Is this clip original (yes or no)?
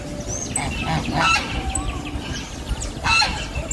yes